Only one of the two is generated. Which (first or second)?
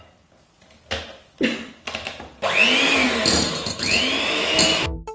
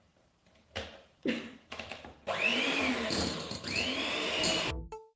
second